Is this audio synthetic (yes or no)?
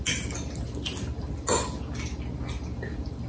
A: no